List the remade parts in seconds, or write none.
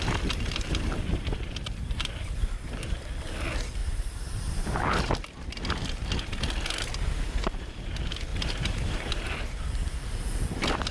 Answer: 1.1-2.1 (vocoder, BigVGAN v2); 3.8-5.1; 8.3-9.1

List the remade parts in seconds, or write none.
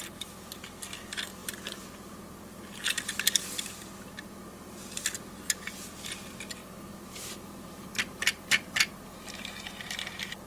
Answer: 6.6-9.7 (vocoder, BigVGAN v2)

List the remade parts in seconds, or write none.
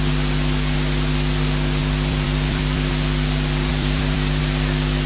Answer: 1.8-2.9 (vocoder, BigVGAN v2); 3.7-4.4